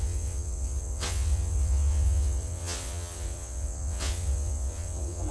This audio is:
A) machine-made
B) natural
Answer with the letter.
A